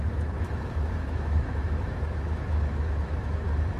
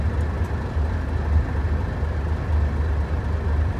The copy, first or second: first